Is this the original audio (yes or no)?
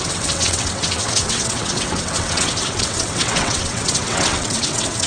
no